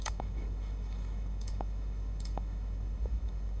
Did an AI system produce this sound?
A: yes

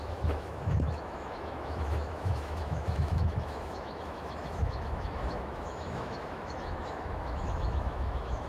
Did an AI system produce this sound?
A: yes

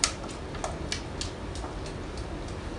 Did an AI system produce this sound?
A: no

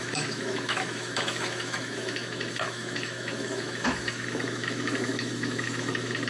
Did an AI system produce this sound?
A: yes